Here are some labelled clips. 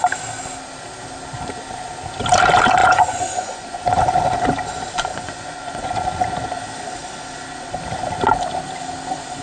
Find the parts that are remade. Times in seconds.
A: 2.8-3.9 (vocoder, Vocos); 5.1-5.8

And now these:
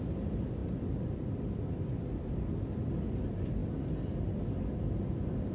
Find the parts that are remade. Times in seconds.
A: none

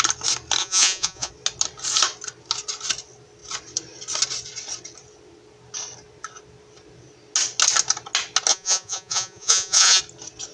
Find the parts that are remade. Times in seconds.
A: 0.6-1.3 (vocoder, Vocos); 8.5-10.0

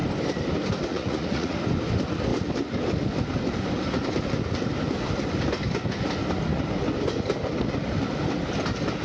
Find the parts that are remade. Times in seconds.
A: 0.9-1.6 (vocoder, Vocos)

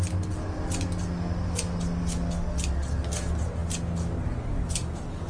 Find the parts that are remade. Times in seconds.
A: none